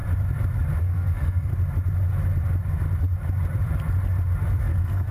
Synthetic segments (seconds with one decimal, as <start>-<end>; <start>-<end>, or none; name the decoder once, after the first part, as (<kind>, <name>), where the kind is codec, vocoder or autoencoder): 0.8-1.5 (codec, SNAC); 4.6-5.1